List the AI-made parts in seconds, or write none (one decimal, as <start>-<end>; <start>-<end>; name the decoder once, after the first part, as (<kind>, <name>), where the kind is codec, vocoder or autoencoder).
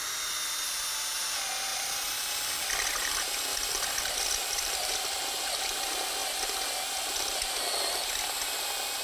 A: 1.7-2.7 (vocoder, BigVGAN v2); 3.5-4.0; 4.4-5.1